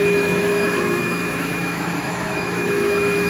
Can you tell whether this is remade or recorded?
remade